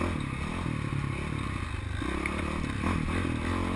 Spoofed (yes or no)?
no